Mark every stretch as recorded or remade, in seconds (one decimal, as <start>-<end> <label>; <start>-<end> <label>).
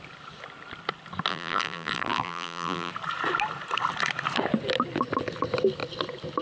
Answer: 0.0-1.3 recorded; 1.3-2.9 remade; 2.9-6.4 recorded